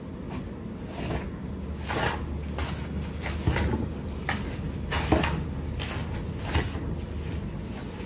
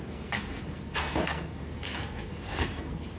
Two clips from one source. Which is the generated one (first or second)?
second